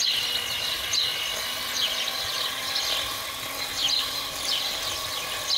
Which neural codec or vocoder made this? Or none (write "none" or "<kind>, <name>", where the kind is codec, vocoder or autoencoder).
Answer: none